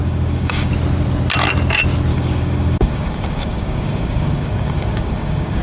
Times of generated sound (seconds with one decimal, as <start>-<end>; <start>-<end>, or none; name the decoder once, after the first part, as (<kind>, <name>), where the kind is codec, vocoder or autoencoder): 0.0-0.7 (codec, DAC); 2.1-5.6